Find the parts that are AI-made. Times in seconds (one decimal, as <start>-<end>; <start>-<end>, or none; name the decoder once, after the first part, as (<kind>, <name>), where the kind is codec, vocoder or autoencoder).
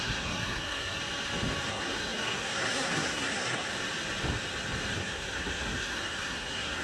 0.0-1.0 (codec, SNAC); 1.7-3.7; 4.9-6.8